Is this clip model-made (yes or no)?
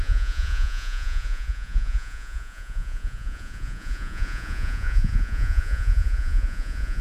yes